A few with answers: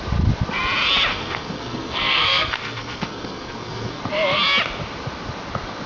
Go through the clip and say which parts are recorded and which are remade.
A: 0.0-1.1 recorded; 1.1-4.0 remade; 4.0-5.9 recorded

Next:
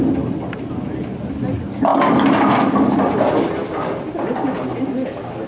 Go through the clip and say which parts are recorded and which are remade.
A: 0.0-5.5 recorded

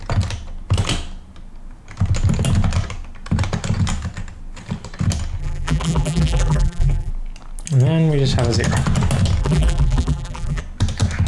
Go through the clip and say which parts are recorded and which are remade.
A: 0.0-5.4 recorded; 5.4-7.1 remade; 7.1-9.4 recorded; 9.4-10.6 remade; 10.6-11.3 recorded

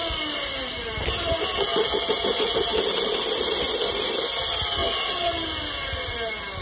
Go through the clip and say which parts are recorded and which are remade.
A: 0.0-1.4 remade; 1.4-2.7 recorded; 2.7-4.1 remade; 4.1-4.8 recorded; 4.8-5.6 remade; 5.6-6.6 recorded

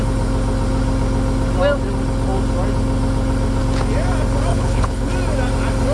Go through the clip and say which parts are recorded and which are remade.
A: 0.0-4.5 recorded; 4.5-5.1 remade; 5.1-5.9 recorded

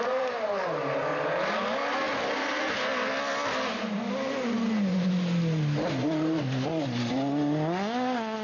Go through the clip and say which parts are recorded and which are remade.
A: 0.0-8.4 recorded